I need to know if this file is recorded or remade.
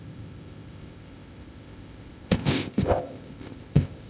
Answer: remade